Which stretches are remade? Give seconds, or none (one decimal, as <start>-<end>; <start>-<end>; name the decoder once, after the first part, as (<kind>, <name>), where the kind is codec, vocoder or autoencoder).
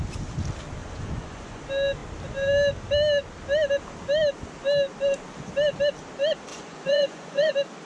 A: 0.8-1.6 (vocoder, Vocos); 6.5-7.5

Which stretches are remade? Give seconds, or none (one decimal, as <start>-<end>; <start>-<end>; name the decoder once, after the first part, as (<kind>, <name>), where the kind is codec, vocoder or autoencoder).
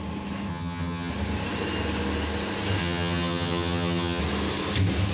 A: 0.5-1.1 (vocoder, HiFi-GAN); 2.8-4.2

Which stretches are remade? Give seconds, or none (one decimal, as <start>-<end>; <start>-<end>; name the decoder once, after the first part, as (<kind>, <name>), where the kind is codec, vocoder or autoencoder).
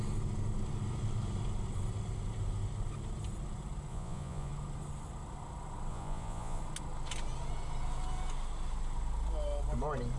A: 3.9-4.5 (vocoder, Vocos); 5.9-6.6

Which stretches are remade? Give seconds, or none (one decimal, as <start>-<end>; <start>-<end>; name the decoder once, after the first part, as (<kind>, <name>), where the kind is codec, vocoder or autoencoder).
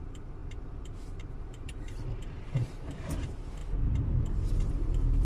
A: 0.0-3.6 (vocoder, BigVGAN v2); 4.2-5.2